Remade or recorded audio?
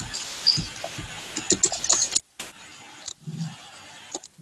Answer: recorded